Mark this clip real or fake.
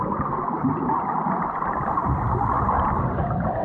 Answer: fake